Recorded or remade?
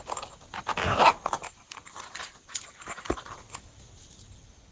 recorded